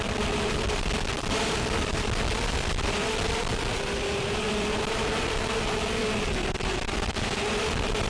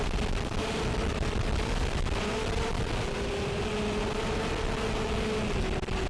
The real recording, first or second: second